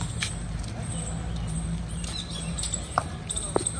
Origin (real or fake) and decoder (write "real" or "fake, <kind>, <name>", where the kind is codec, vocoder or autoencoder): real